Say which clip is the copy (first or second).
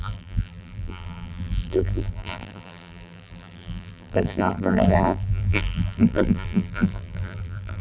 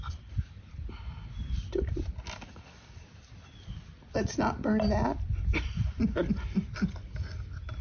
first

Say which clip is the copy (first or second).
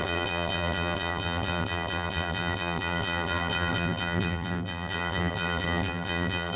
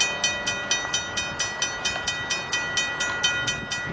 first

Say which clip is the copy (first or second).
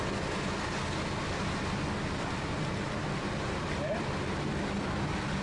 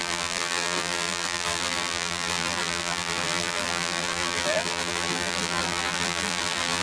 second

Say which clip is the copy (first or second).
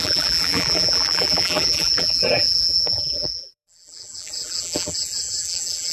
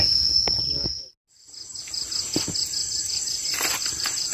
first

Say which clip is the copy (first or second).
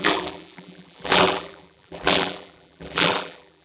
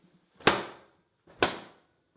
first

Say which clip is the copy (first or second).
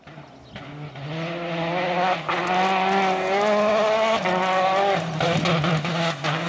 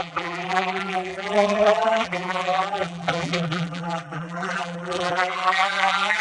second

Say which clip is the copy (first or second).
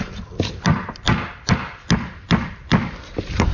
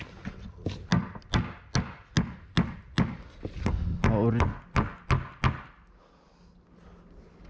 first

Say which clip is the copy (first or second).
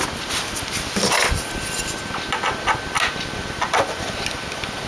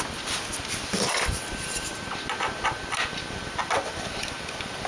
second